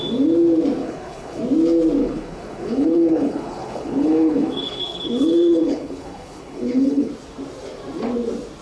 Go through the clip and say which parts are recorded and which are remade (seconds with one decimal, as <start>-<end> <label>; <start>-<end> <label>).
0.0-0.8 recorded; 0.8-1.4 remade; 1.4-2.0 recorded; 2.0-7.1 remade; 7.1-8.6 recorded